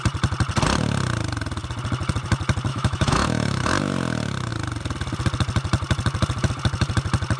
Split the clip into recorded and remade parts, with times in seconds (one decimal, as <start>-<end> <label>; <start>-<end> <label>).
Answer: 0.0-2.7 recorded; 2.7-3.7 remade; 3.7-7.4 recorded